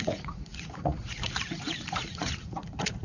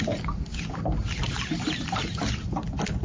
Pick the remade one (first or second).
first